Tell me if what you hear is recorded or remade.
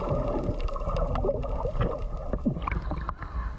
recorded